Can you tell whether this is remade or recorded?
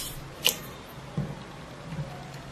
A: recorded